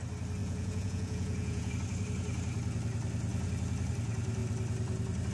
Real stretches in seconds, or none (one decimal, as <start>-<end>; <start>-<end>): 0.0-0.4; 1.7-5.3